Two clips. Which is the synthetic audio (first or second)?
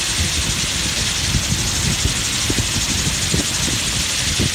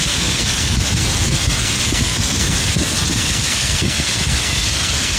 second